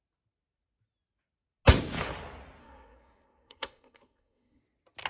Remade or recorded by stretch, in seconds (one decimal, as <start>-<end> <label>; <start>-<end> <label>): 0.0-2.6 recorded; 2.6-4.6 remade; 4.6-5.1 recorded